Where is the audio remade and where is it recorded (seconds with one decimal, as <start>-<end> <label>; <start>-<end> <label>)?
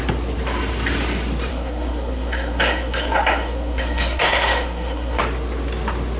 0.0-1.5 recorded; 1.5-5.2 remade; 5.2-6.2 recorded